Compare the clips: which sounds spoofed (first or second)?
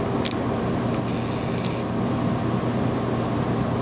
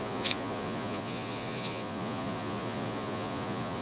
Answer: second